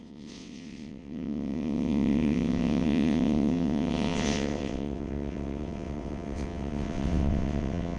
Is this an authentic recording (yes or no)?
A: no